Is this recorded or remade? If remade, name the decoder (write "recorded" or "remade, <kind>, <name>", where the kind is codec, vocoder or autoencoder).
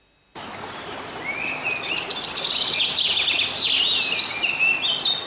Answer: recorded